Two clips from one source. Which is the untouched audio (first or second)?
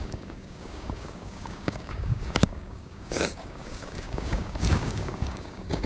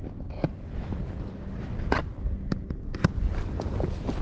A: second